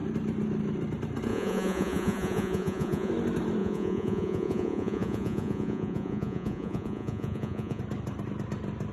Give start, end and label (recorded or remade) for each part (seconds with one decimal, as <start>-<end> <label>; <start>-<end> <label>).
0.0-1.3 recorded; 1.3-3.1 remade; 3.1-3.6 recorded; 3.6-7.8 remade; 7.8-8.9 recorded